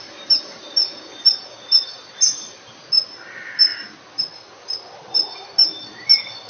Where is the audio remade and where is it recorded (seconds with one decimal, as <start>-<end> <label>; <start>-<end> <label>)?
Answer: 0.0-6.5 recorded